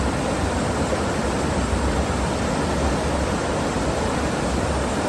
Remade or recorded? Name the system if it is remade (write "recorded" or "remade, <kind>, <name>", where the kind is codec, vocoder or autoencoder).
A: recorded